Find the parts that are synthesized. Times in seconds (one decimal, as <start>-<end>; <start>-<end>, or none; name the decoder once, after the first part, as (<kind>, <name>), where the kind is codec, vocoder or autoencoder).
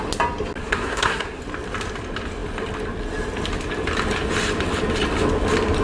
0.6-1.4 (codec, SNAC)